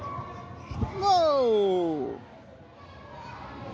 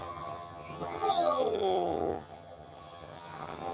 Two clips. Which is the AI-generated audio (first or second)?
second